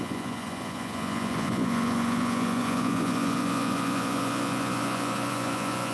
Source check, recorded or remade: remade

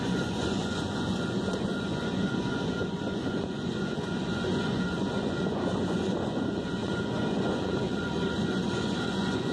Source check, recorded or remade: remade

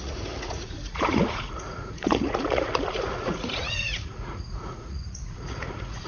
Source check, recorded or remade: remade